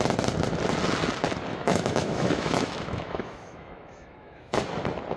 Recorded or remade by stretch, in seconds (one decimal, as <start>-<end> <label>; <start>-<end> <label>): 0.0-1.5 recorded; 1.5-4.6 remade; 4.6-5.2 recorded